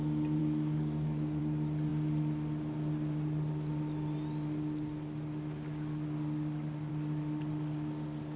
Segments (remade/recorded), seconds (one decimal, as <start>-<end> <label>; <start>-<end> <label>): 0.0-0.4 recorded; 0.4-1.4 remade; 1.4-8.4 recorded